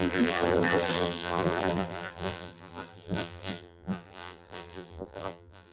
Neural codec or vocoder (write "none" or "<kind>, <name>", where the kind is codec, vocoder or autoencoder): vocoder, BigVGAN v2